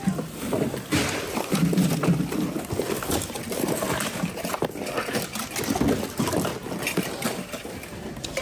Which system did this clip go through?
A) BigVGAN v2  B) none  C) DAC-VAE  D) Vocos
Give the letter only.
B